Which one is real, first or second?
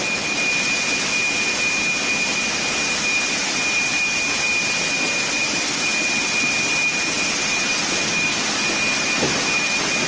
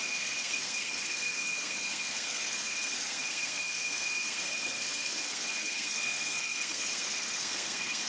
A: first